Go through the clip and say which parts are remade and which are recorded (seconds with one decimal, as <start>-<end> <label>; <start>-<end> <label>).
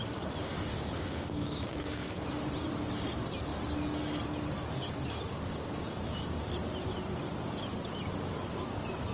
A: 0.0-0.7 recorded; 0.7-2.2 remade; 2.2-5.5 recorded; 5.5-6.5 remade; 6.5-9.1 recorded